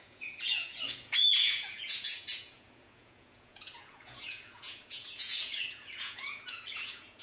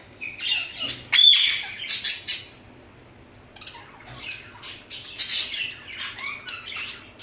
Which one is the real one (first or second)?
second